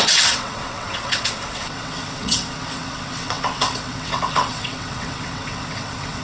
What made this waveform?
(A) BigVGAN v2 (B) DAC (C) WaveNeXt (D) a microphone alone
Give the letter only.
C